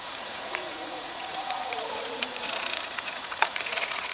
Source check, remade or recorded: remade